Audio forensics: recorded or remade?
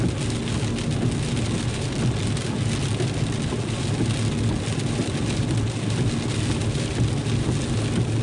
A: recorded